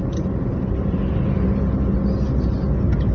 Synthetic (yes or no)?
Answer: no